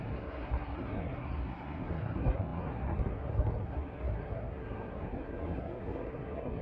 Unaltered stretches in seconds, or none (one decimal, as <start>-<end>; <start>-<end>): none